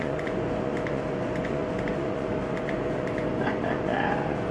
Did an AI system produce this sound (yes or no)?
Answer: yes